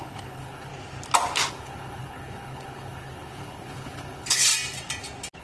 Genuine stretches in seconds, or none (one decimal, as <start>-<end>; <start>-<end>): 0.7-1.5; 4.5-5.4